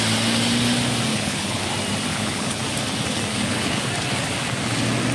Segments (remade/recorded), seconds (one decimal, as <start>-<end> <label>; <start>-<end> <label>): 0.0-1.1 recorded; 1.1-1.6 remade; 1.6-2.1 recorded; 2.1-2.6 remade; 2.6-3.3 recorded; 3.3-3.9 remade; 3.9-5.1 recorded